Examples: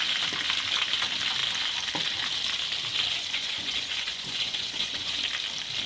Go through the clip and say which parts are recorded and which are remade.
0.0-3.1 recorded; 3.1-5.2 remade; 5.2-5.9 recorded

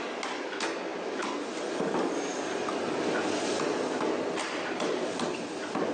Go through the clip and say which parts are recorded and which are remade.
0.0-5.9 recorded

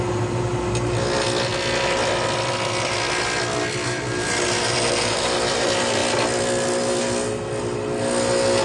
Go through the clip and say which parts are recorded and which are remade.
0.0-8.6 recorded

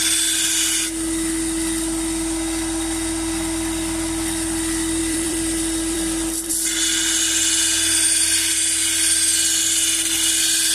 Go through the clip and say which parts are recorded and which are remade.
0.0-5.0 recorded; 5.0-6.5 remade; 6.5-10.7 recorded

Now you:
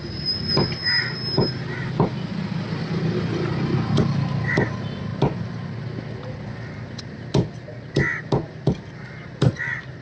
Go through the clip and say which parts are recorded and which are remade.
0.0-10.0 recorded

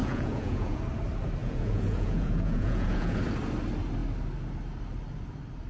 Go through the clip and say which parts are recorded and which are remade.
0.0-0.8 remade; 0.8-1.4 recorded; 1.4-3.2 remade; 3.2-5.7 recorded